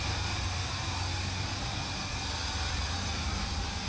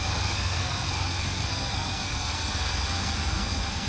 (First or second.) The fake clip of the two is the second